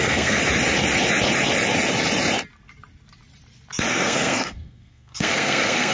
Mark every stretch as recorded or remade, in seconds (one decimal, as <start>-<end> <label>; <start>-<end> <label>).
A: 0.0-0.4 remade; 0.4-3.9 recorded; 3.9-5.9 remade